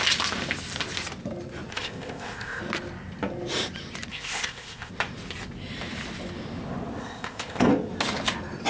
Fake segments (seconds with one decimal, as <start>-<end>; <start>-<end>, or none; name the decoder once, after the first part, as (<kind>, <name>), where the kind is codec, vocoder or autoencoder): 1.7-2.6 (codec, ZipCodec); 4.1-4.9; 7.0-7.7